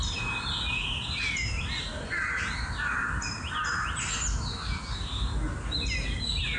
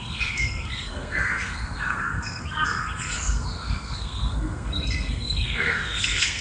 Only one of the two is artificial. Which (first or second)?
second